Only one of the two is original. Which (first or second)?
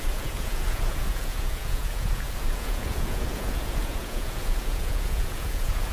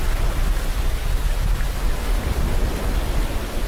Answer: second